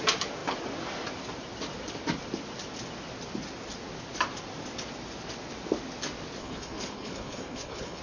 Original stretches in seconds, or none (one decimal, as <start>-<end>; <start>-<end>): 0.0-6.4